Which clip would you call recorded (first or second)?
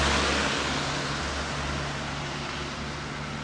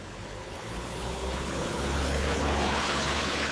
first